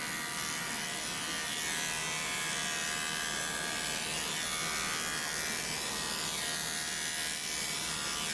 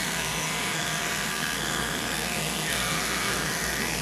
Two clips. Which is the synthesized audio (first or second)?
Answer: second